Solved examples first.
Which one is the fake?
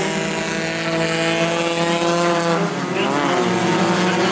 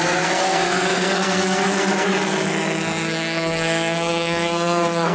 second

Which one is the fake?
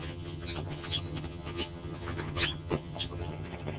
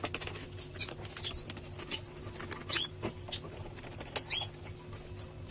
first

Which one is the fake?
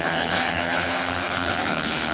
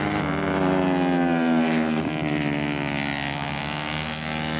first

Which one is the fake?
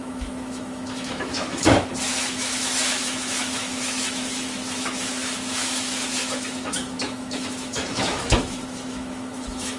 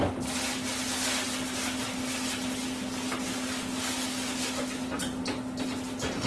first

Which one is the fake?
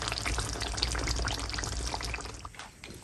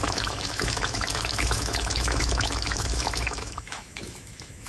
second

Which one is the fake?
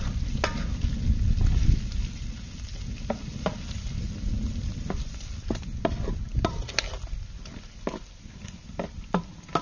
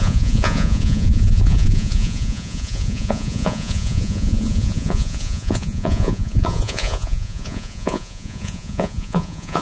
second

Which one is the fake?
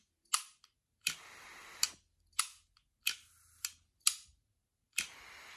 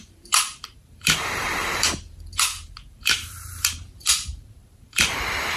second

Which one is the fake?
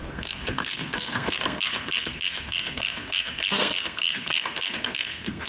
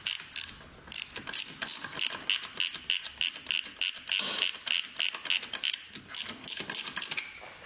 first